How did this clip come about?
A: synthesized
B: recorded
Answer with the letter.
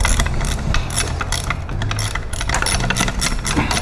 B